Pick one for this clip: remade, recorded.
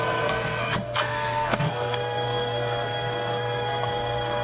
remade